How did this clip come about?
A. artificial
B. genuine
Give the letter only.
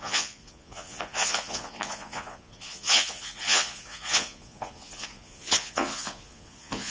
A